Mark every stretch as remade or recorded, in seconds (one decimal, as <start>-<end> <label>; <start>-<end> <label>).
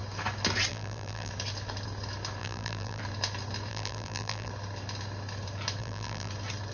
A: 0.0-0.7 recorded; 0.7-1.3 remade; 1.3-2.4 recorded; 2.4-3.0 remade; 3.0-3.7 recorded; 3.7-4.5 remade; 4.5-5.8 recorded; 5.8-6.3 remade; 6.3-6.7 recorded